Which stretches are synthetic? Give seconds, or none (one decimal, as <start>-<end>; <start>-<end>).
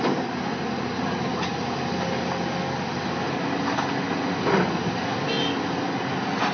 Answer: none